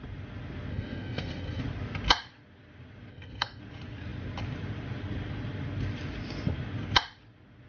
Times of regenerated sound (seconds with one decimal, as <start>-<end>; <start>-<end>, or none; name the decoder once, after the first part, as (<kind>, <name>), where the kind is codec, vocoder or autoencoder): 0.7-1.6 (codec, SNAC); 3.1-3.6